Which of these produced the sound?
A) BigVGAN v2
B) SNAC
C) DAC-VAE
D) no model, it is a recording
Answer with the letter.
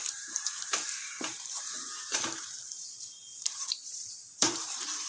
A